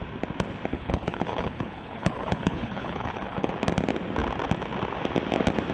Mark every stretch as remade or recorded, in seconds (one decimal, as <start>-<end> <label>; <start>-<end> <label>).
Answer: 0.0-0.7 recorded; 0.7-3.5 remade; 3.5-5.7 recorded